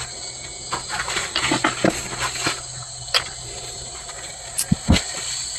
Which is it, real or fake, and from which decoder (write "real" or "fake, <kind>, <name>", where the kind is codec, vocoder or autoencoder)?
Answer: real